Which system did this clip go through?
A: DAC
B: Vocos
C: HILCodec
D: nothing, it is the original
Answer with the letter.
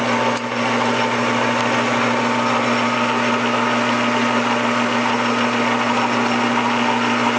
D